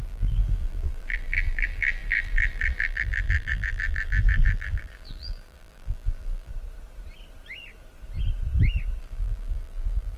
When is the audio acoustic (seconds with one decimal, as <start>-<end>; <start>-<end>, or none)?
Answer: 6.5-9.0